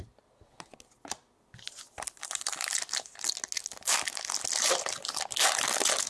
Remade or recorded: recorded